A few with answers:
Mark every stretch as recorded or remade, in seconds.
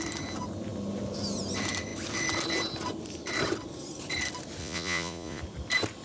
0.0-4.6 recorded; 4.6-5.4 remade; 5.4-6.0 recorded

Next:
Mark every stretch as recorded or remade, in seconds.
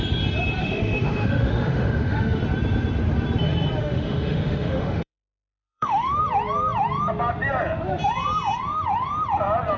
0.0-0.6 recorded; 0.6-2.4 remade; 2.4-3.8 recorded; 3.8-6.2 remade; 6.2-9.8 recorded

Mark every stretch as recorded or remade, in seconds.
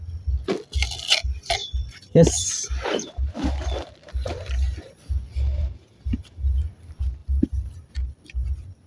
0.0-1.6 recorded; 1.6-6.6 remade; 6.6-7.2 recorded; 7.2-7.9 remade; 7.9-8.9 recorded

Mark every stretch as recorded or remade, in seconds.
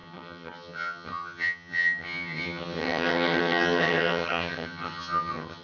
0.0-5.6 remade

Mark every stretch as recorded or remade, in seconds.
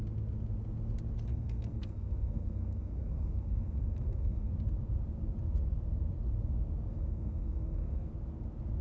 0.0-1.3 recorded; 1.3-4.5 remade; 4.5-6.9 recorded; 6.9-8.1 remade; 8.1-8.8 recorded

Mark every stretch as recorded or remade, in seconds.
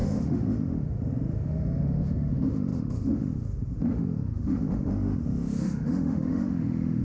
0.0-7.0 remade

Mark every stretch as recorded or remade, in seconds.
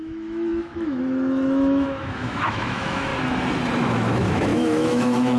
0.0-3.1 remade; 3.1-3.8 recorded; 3.8-5.4 remade